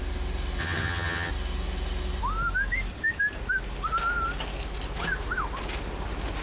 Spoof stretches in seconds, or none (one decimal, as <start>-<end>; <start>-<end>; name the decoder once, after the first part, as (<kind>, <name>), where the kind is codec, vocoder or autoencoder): 0.6-1.3 (vocoder, HiFi-GAN)